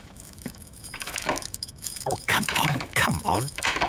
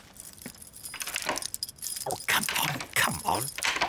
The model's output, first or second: first